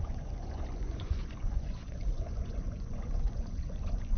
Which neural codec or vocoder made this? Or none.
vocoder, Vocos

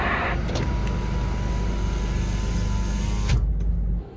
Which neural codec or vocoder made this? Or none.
none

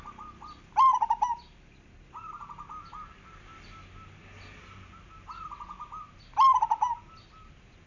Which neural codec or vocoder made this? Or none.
none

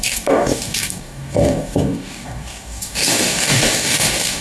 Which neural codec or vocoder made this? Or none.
codec, DAC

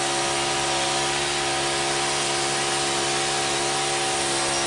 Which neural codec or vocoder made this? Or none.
none